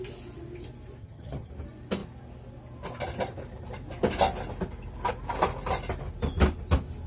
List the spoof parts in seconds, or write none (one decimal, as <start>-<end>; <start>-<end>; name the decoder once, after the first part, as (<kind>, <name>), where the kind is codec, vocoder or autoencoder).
1.0-1.5 (vocoder, HiFi-GAN)